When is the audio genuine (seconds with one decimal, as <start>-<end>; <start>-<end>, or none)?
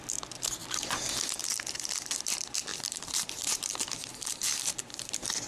0.0-2.7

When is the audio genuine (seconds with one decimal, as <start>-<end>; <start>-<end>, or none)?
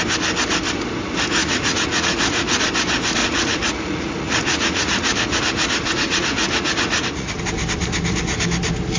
0.0-1.4; 2.6-3.2; 7.4-9.0